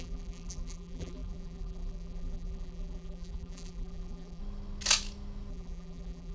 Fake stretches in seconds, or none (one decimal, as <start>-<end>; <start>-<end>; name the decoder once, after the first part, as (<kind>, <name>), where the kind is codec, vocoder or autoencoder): 0.0-4.4 (vocoder, BigVGAN v2); 5.5-6.3